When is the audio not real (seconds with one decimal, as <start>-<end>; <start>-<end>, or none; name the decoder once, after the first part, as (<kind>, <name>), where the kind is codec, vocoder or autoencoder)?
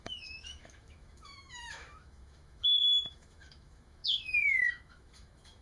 0.0-5.6 (autoencoder, DAC-VAE)